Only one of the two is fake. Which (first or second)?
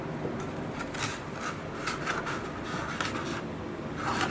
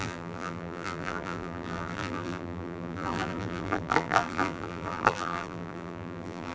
second